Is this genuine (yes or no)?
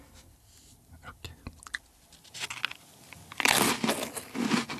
yes